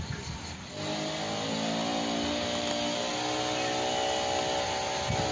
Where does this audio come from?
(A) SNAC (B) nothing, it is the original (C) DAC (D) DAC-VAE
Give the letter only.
B